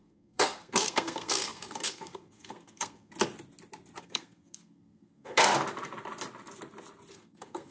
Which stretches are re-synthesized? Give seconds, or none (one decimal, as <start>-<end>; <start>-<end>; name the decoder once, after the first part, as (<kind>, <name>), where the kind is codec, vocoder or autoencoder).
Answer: 0.0-3.1 (codec, SNAC); 4.0-5.5; 7.1-7.7